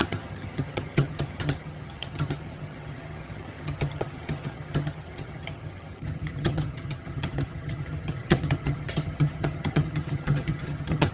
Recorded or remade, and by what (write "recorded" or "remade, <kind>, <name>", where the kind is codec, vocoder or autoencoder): remade, vocoder, HiFi-GAN